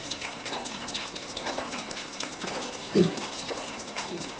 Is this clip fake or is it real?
fake